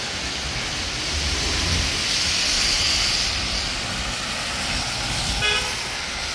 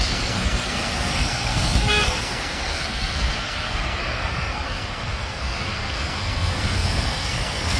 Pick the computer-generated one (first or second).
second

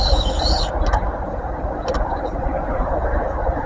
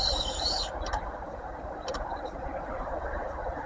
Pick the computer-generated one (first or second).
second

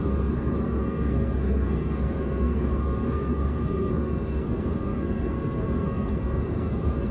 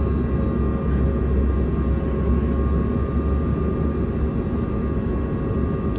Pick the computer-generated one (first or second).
first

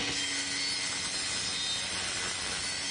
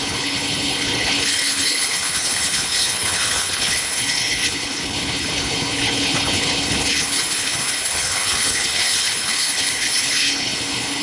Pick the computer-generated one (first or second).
second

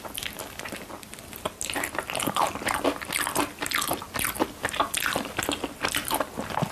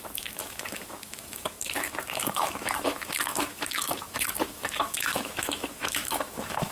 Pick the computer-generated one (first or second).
second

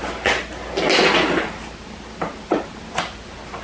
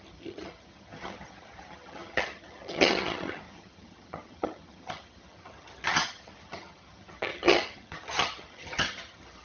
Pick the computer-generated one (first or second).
second